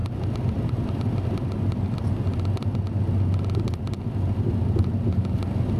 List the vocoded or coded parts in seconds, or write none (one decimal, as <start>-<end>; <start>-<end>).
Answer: 0.0-2.2